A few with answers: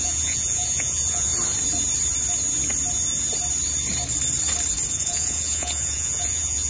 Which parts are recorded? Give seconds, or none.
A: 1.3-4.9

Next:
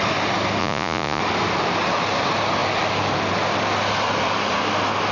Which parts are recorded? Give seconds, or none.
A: 0.0-0.6; 1.2-5.1

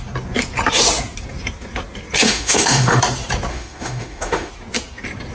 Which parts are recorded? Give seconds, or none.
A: 0.0-2.2; 3.0-3.5; 4.5-5.3

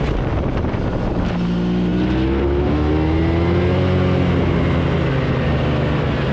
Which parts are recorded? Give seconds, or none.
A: 0.0-6.3